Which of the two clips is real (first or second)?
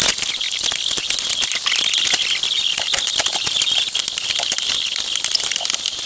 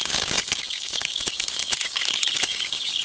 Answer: first